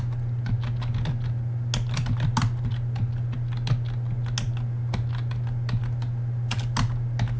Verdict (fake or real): real